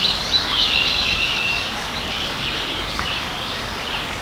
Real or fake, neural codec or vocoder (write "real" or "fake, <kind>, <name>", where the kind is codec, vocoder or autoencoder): fake, codec, DAC